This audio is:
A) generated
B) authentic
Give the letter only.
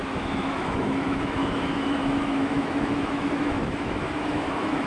A